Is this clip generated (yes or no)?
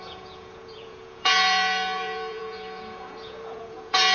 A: yes